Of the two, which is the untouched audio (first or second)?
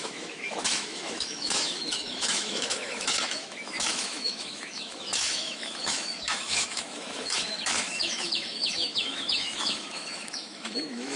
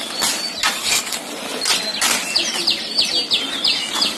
second